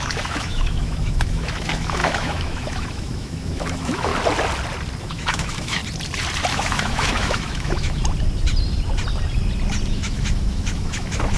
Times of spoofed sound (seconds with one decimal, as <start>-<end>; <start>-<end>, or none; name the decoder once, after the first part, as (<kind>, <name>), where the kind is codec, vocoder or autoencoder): 0.0-4.1 (autoencoder, DAC-VAE); 5.0-5.8; 6.5-8.0; 9.9-11.4